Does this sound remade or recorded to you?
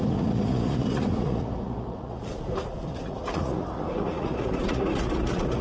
remade